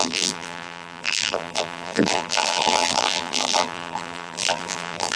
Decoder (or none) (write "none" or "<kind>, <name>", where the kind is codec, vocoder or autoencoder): vocoder, BigVGAN v2